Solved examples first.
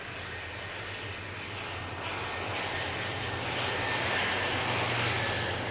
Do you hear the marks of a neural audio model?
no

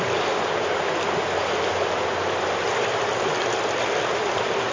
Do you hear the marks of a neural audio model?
no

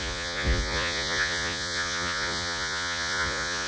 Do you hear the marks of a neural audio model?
yes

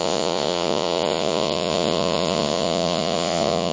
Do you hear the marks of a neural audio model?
yes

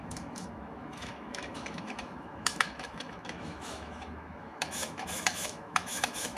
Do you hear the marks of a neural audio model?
yes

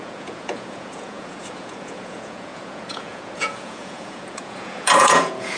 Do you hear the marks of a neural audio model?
yes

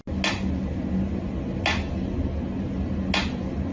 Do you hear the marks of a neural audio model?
no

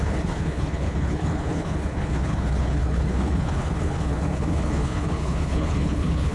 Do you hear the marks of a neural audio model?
yes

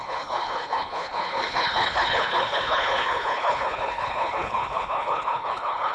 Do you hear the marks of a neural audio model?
yes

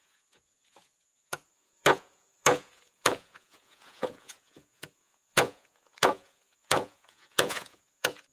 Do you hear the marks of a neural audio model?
yes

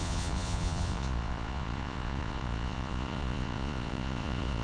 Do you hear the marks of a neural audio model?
yes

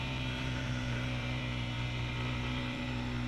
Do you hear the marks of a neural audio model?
yes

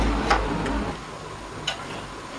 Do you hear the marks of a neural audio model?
no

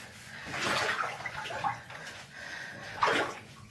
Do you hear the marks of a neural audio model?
yes